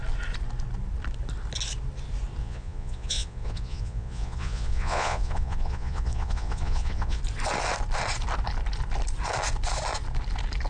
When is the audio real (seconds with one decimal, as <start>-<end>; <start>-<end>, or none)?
0.0-2.4; 7.2-10.7